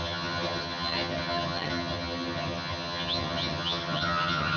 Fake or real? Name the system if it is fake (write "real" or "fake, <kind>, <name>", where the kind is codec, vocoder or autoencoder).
fake, vocoder, HiFi-GAN